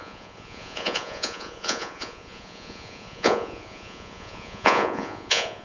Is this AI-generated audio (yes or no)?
yes